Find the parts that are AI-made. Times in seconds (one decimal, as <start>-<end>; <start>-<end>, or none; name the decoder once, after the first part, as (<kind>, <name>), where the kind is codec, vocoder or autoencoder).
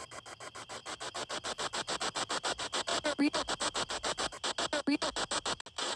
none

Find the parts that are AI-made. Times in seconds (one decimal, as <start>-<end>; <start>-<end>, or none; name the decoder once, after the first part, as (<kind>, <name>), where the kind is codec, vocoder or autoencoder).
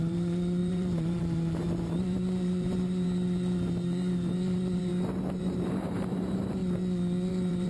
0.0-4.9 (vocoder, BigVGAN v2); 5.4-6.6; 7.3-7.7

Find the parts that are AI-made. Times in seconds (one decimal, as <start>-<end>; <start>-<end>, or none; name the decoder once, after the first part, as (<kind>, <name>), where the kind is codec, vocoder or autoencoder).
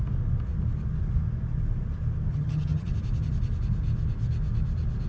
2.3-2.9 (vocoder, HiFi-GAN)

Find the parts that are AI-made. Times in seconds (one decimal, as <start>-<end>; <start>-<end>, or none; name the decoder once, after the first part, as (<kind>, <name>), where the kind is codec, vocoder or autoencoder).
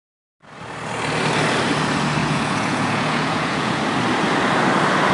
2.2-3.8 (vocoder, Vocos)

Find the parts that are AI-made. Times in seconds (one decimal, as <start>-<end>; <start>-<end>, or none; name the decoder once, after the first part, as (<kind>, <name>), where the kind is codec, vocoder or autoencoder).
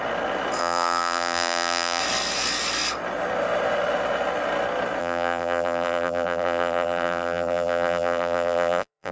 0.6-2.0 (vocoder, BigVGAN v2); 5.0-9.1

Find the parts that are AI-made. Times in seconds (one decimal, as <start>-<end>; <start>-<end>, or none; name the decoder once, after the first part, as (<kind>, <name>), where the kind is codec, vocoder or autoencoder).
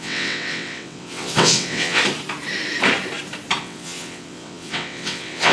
0.0-2.0 (vocoder, WaveNeXt); 3.6-5.5